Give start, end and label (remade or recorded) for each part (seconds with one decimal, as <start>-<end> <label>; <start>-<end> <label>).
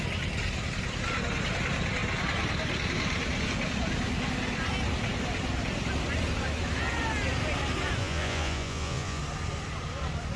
0.0-8.0 recorded; 8.0-9.2 remade; 9.2-10.4 recorded